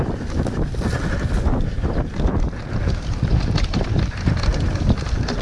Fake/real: real